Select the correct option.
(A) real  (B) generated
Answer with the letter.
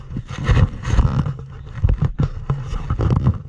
A